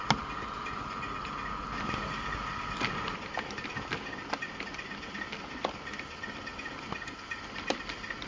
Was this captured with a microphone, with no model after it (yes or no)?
yes